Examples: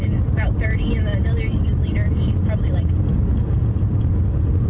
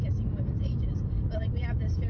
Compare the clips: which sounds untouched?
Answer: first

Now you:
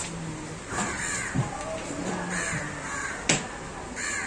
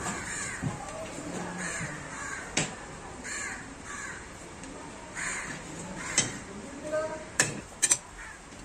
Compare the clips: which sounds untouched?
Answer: first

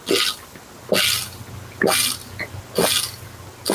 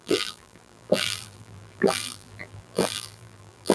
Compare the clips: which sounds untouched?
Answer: first